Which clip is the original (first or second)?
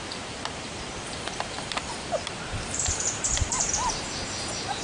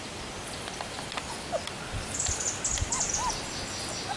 second